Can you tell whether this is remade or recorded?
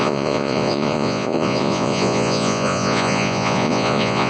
remade